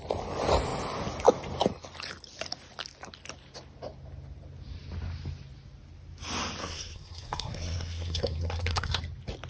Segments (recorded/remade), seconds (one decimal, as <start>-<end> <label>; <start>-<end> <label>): 0.0-6.6 recorded; 6.6-9.0 remade; 9.0-9.5 recorded